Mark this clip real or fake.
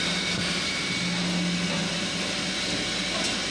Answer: real